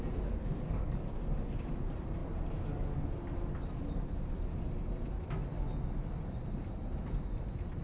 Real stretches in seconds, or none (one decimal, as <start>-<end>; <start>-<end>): 0.0-0.4; 1.1-7.8